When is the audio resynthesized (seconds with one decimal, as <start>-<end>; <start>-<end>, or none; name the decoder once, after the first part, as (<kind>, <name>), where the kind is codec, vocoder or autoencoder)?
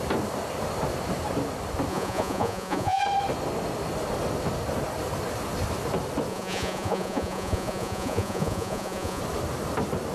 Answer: 1.9-3.0 (vocoder, Vocos); 6.3-9.2